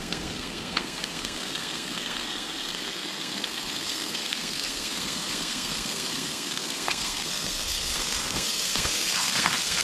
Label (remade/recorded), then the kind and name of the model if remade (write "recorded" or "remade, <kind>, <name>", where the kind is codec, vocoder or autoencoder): remade, codec, SNAC